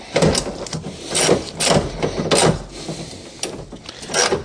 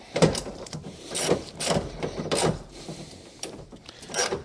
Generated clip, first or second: second